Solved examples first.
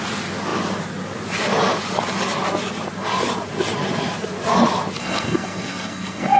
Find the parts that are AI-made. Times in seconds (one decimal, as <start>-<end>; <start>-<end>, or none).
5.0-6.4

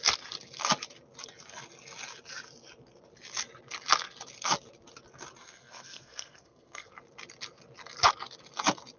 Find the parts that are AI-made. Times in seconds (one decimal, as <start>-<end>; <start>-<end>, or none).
5.4-6.9

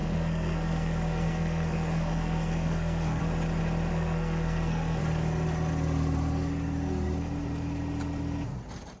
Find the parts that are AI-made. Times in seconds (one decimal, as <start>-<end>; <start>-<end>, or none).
0.0-3.2; 3.9-5.0

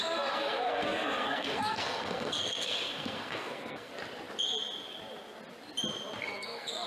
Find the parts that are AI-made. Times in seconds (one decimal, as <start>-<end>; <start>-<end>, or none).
0.0-3.9; 6.2-6.9